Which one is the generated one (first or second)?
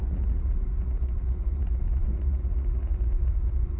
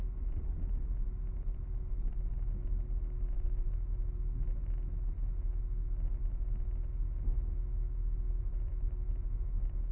first